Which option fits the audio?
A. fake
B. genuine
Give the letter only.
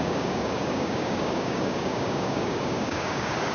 A